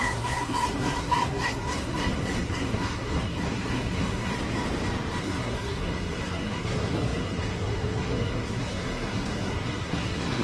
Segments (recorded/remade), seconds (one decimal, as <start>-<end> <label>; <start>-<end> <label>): 0.0-4.3 remade; 4.3-5.2 recorded; 5.2-10.4 remade